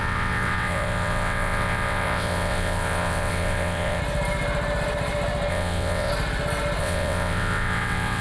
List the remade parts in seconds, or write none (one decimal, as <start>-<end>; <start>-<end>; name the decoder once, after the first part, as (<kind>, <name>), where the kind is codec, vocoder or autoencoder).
0.0-4.0 (vocoder, WaveNeXt); 5.5-6.1; 6.8-8.2